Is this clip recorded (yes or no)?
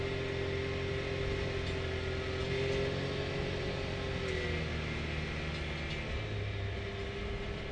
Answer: yes